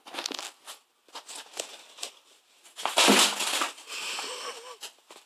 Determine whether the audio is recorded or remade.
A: recorded